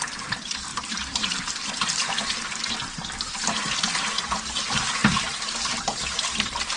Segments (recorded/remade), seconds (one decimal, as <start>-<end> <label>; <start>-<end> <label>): 0.0-6.8 remade